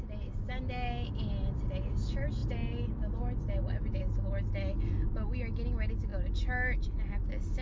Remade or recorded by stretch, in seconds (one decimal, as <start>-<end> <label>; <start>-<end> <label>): 0.0-7.6 recorded